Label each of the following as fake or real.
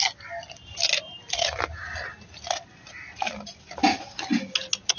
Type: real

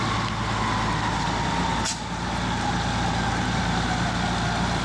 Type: real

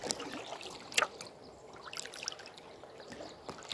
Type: real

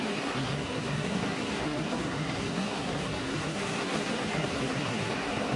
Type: fake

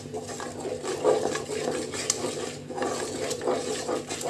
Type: real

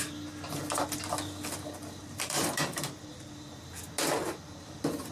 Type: real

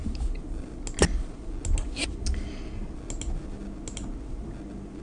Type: real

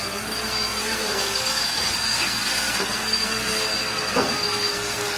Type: fake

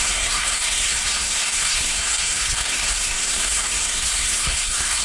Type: fake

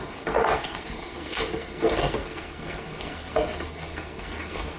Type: fake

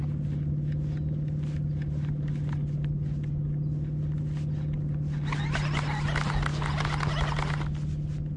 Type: real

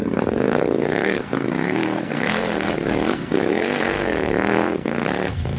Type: fake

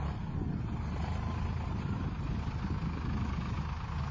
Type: real